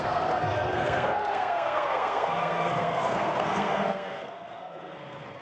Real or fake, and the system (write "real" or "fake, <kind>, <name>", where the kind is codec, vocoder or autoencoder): fake, codec, SNAC